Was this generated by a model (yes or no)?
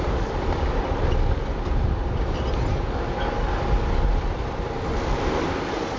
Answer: no